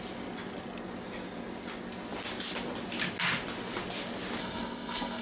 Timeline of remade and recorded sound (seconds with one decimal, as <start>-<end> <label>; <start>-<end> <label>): 0.0-4.4 recorded; 4.4-5.2 remade